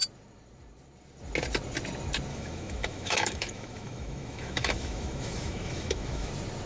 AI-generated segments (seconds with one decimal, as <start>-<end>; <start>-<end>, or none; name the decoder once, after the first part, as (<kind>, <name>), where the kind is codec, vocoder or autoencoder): 2.3-6.3 (autoencoder, DAC-VAE)